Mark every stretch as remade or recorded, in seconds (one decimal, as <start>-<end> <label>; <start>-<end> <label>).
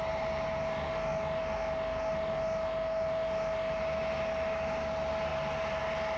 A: 0.0-0.6 recorded; 0.6-3.8 remade; 3.8-6.2 recorded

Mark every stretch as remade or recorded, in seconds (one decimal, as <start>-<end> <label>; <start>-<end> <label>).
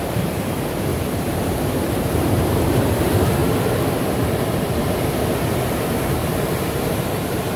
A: 0.0-0.9 remade; 0.9-1.7 recorded; 1.7-3.4 remade; 3.4-4.9 recorded; 4.9-7.6 remade